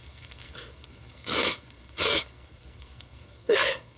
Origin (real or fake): fake